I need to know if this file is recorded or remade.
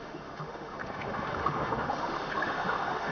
remade